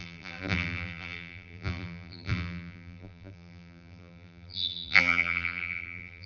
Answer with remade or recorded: remade